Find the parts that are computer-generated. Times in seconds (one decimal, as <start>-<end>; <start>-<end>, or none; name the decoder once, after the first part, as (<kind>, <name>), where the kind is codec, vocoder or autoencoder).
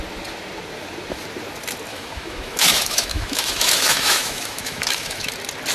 1.9-5.3 (autoencoder, DAC-VAE)